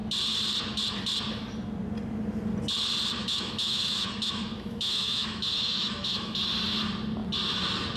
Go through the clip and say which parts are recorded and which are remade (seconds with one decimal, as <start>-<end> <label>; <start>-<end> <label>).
0.0-3.2 recorded; 3.2-6.4 remade; 6.4-8.0 recorded